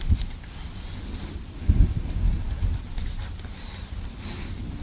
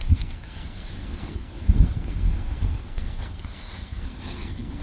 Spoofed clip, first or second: second